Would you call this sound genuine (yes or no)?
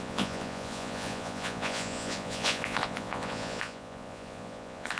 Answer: no